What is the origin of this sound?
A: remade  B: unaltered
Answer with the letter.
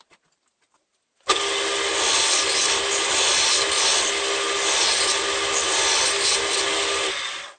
B